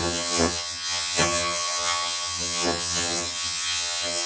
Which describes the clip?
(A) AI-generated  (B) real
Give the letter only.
A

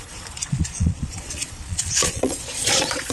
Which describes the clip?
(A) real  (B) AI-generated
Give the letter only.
B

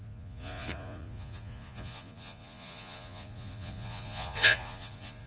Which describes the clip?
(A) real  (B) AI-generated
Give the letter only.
B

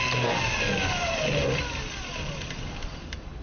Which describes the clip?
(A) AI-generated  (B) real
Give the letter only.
B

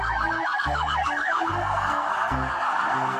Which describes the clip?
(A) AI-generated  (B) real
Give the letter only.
A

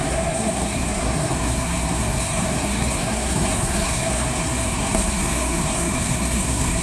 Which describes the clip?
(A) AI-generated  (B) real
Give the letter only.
A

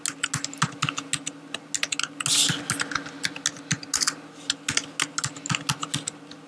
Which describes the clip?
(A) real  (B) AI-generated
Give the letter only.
A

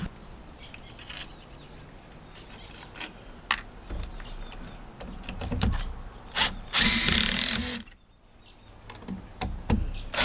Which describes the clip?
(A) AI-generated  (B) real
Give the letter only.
B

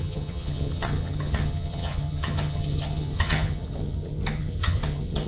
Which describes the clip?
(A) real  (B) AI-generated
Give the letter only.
B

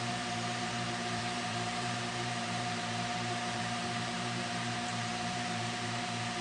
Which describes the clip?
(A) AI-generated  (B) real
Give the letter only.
A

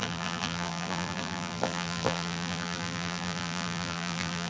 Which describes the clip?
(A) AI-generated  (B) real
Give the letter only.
A